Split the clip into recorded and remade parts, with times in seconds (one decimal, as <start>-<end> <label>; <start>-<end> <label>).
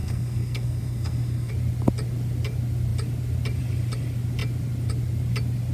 0.0-1.5 remade; 1.5-5.7 recorded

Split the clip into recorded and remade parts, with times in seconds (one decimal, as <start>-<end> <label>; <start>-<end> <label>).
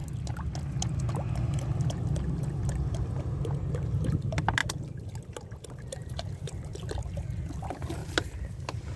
0.0-9.0 recorded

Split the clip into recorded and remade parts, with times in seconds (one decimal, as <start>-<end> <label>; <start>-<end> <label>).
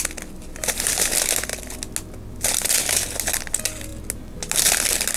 0.0-5.2 recorded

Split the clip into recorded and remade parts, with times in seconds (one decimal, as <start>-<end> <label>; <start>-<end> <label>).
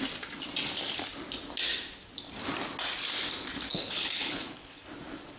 0.0-3.7 recorded; 3.7-4.9 remade; 4.9-5.4 recorded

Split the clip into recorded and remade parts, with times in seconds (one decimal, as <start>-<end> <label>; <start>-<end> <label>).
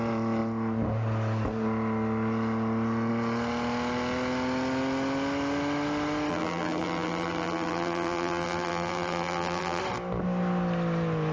0.0-6.3 recorded; 6.3-9.8 remade; 9.8-11.3 recorded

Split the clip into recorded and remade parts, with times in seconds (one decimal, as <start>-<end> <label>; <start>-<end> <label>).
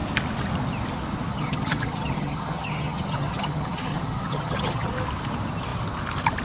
0.0-1.3 recorded; 1.3-4.9 remade; 4.9-6.4 recorded